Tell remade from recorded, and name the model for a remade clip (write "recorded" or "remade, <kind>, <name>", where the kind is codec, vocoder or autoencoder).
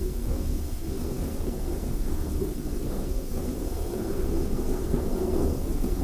remade, codec, SNAC